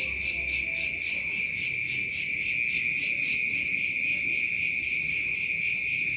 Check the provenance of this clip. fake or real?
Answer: real